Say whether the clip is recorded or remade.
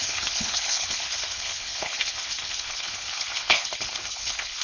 remade